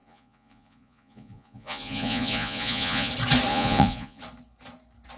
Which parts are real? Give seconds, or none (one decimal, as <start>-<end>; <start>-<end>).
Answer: 3.1-3.5; 4.2-5.2